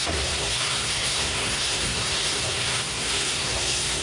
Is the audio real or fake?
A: fake